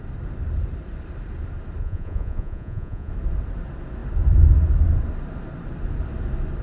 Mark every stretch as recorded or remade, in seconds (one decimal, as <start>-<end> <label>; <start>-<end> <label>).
0.0-1.8 recorded; 1.8-3.1 remade; 3.1-6.6 recorded